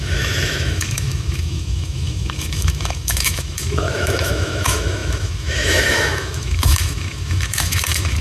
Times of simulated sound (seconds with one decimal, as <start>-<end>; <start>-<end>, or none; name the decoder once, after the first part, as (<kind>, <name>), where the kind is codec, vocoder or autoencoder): 0.0-8.2 (autoencoder, DAC-VAE)